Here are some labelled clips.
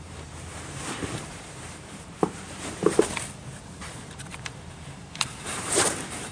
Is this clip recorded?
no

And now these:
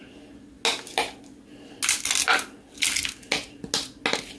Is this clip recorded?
yes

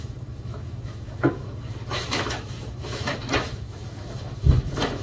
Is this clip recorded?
no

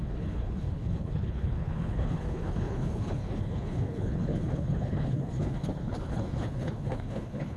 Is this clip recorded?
no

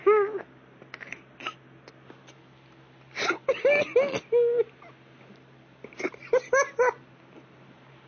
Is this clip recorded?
yes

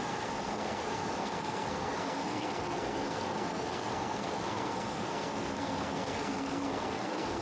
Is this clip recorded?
no